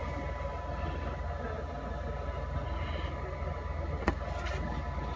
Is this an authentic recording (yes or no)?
yes